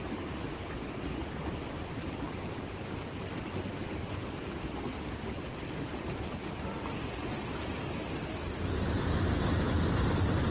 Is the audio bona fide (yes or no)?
yes